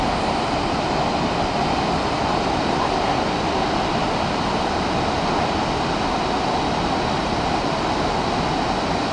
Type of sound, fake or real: real